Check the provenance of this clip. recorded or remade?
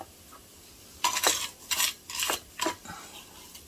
recorded